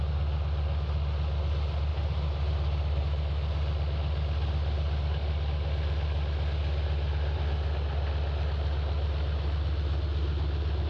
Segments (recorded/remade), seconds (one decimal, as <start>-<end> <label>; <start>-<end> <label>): 0.0-1.9 recorded; 1.9-3.0 remade; 3.0-10.9 recorded